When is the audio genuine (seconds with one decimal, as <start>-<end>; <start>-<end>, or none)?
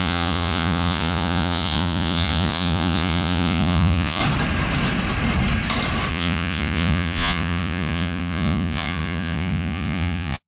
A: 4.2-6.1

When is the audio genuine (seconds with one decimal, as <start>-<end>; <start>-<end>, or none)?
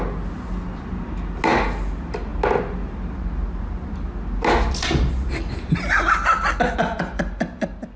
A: 0.0-8.0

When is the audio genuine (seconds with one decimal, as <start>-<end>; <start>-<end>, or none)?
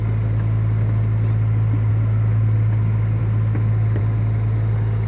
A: 0.0-5.1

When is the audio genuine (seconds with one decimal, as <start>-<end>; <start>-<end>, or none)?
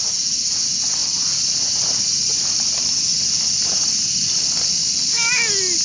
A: 0.0-5.8